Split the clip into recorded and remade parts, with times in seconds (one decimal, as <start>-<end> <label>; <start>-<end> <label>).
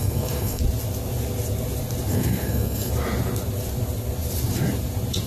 0.0-0.6 remade; 0.6-2.1 recorded; 2.1-2.9 remade; 2.9-5.3 recorded